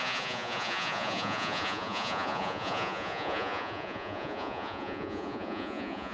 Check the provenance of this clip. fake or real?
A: fake